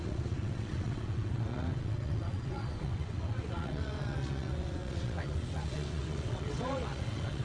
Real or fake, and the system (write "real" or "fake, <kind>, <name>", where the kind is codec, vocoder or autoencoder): fake, vocoder, WaveNeXt